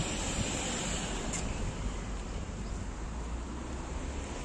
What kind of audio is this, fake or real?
real